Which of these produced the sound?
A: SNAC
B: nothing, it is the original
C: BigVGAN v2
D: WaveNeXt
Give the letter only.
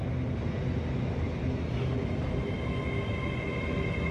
B